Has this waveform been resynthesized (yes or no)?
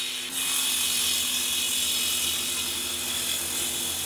no